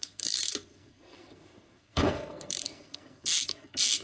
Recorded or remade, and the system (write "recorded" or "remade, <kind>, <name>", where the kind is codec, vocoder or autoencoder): remade, codec, SNAC